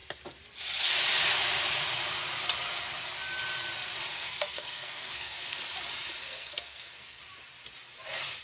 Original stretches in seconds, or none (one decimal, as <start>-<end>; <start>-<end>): 0.0-4.1; 5.6-6.2; 7.2-8.4